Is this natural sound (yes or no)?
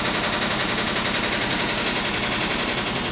yes